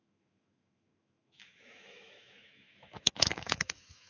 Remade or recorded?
remade